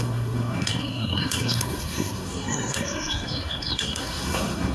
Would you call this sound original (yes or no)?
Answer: no